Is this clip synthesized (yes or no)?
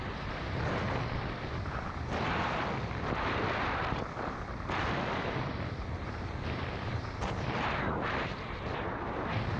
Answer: yes